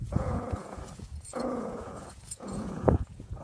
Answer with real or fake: fake